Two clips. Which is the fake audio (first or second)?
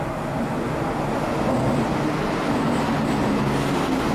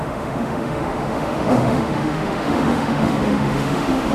second